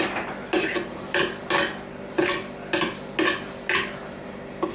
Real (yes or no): yes